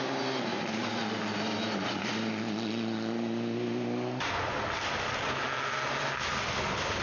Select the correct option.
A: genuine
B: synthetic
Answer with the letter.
A